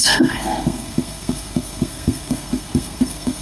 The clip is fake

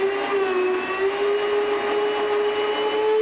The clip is real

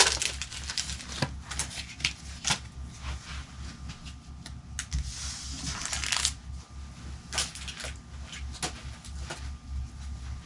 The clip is real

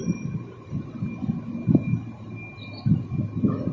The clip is real